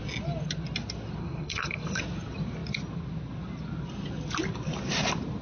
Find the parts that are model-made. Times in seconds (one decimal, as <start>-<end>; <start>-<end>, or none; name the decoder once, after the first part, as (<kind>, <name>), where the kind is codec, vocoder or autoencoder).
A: 1.2-2.0 (codec, SNAC)

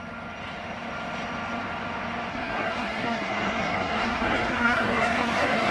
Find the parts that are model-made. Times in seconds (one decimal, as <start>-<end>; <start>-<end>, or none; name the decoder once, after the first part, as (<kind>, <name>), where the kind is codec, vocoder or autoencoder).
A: 2.3-5.7 (codec, SNAC)

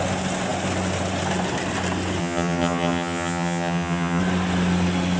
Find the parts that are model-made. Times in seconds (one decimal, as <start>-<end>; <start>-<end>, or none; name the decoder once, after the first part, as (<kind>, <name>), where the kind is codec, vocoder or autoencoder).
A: 2.2-4.2 (vocoder, HiFi-GAN)

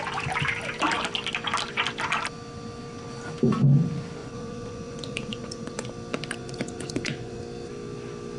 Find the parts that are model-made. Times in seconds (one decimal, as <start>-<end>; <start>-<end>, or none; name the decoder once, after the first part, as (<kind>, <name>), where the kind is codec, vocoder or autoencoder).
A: 4.2-5.9 (vocoder, Vocos); 6.4-7.4